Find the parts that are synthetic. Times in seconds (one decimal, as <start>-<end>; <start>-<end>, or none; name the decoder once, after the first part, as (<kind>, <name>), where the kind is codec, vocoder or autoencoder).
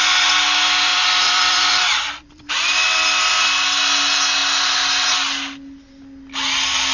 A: 0.9-2.5 (vocoder, BigVGAN v2)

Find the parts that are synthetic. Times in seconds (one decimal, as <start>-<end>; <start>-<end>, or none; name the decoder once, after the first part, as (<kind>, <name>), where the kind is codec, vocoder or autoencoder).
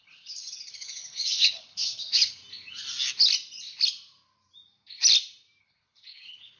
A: 0.0-2.4 (codec, HILCodec); 5.6-6.6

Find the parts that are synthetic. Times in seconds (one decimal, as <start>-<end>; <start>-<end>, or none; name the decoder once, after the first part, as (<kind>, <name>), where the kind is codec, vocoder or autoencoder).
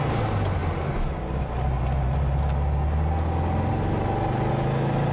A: none